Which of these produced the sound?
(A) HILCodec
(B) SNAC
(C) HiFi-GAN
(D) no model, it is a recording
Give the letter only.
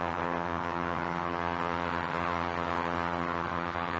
C